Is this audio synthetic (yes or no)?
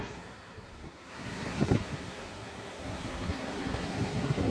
yes